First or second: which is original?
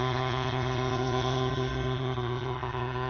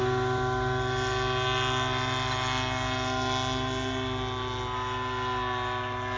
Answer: second